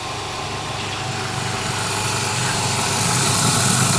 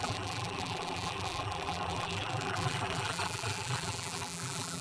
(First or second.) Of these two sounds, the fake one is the second